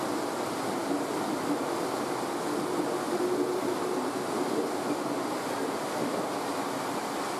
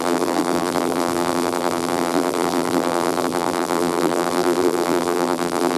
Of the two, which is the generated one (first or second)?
second